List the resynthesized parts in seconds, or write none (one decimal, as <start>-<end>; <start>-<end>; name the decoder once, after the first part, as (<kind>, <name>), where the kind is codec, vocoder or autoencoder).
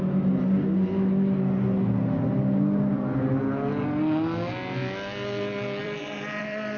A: 5.8-6.8 (vocoder, BigVGAN v2)